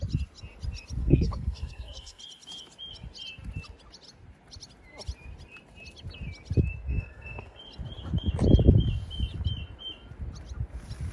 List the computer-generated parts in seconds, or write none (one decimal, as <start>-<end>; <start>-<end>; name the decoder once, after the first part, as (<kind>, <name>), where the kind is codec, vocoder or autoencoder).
1.0-2.2 (codec, SNAC); 6.9-7.6